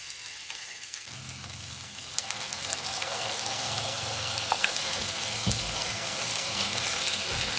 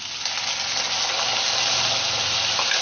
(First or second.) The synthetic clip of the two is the first